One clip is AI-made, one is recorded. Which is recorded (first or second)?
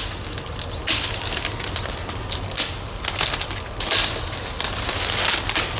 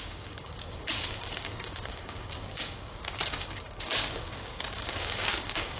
first